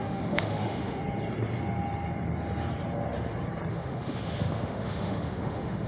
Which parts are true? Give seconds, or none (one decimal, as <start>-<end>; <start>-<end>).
1.0-3.7

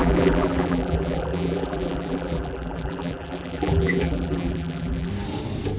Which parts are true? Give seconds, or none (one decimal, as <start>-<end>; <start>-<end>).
5.1-5.8

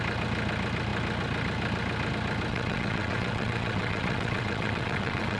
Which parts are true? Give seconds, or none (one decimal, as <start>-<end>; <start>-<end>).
0.0-2.5

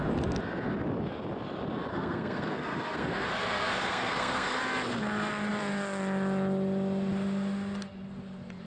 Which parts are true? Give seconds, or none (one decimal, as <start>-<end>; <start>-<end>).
0.0-1.9; 4.6-8.7

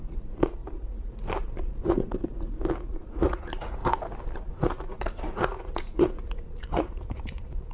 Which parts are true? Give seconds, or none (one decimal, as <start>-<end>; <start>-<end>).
0.6-1.8; 2.3-3.0; 3.8-4.5

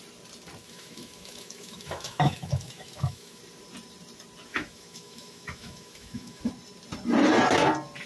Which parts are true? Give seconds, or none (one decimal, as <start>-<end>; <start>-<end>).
0.0-0.6; 3.4-4.5; 6.5-8.1